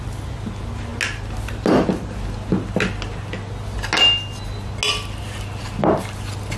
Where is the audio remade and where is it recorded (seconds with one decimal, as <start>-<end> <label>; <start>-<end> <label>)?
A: 0.0-6.6 recorded